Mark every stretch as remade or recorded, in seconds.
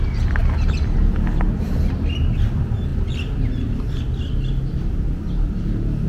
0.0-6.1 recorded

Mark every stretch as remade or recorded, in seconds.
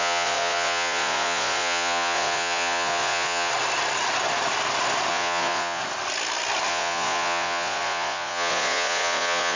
0.0-3.5 remade; 3.5-5.1 recorded; 5.1-5.8 remade; 5.8-6.7 recorded; 6.7-9.6 remade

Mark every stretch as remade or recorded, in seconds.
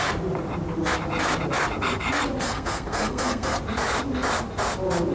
0.0-2.4 recorded; 2.4-3.6 remade; 3.6-5.1 recorded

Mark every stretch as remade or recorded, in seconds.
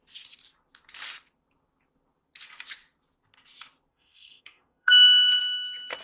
0.0-3.9 recorded; 3.9-5.4 remade; 5.4-6.0 recorded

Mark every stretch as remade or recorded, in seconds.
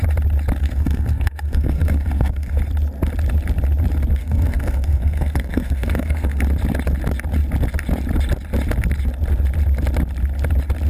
0.0-0.6 recorded; 0.6-2.6 remade; 2.6-4.2 recorded; 4.2-6.4 remade; 6.4-10.9 recorded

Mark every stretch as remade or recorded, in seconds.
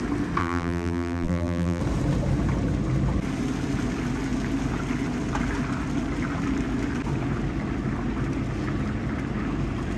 0.0-0.4 recorded; 0.4-1.8 remade; 1.8-10.0 recorded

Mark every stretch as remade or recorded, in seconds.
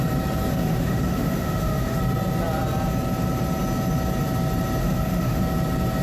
0.0-0.5 recorded; 0.5-2.0 remade; 2.0-4.8 recorded; 4.8-5.4 remade; 5.4-6.0 recorded